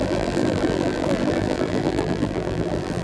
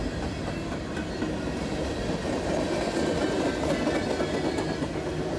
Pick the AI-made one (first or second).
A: first